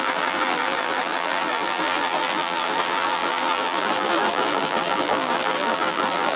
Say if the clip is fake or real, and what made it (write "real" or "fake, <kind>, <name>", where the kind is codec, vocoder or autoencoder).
fake, vocoder, BigVGAN v2